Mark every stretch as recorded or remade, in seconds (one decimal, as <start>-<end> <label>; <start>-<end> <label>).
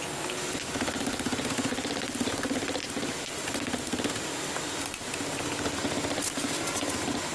0.0-7.3 recorded